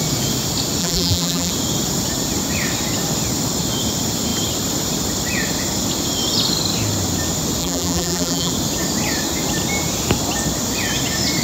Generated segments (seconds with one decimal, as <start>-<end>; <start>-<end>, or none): 0.8-1.5; 7.6-8.5